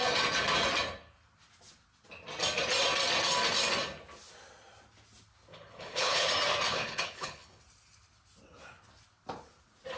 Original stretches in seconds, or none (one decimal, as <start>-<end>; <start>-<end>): 0.0-5.5; 6.3-6.7; 7.6-10.0